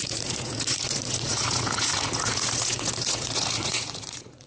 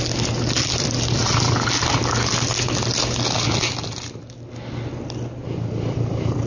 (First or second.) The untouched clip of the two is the second